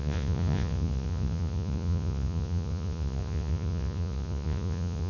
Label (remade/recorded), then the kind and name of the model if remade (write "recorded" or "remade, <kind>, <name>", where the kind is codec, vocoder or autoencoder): remade, vocoder, Vocos